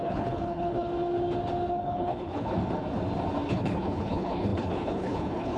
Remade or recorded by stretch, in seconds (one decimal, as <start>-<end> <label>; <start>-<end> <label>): 0.0-0.9 remade; 0.9-1.7 recorded; 1.7-2.6 remade; 2.6-3.5 recorded; 3.5-5.6 remade